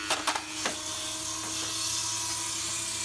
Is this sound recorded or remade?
recorded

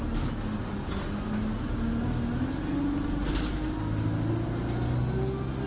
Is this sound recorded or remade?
recorded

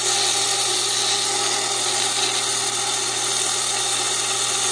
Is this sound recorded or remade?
recorded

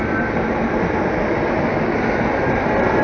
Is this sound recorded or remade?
recorded